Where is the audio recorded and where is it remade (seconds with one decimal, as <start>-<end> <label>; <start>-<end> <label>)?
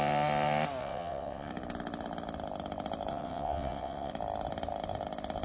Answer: 0.0-0.8 recorded; 0.8-1.5 remade; 1.5-3.1 recorded; 3.1-4.1 remade; 4.1-5.4 recorded